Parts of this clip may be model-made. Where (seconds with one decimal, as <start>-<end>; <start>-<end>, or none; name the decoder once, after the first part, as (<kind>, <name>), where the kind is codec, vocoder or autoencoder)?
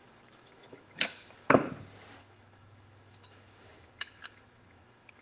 0.0-1.7 (autoencoder, DAC-VAE); 2.2-5.2